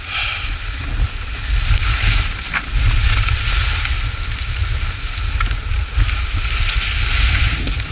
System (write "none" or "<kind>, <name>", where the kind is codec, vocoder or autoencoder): none